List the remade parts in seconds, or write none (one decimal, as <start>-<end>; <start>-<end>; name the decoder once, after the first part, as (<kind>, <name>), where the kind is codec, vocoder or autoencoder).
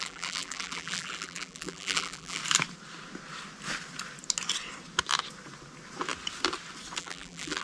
0.0-2.4 (vocoder, BigVGAN v2); 7.0-7.6